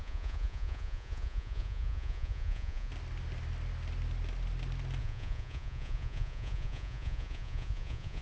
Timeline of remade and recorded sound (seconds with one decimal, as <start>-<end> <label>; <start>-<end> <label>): 0.0-2.9 remade; 2.9-5.0 recorded; 5.0-8.2 remade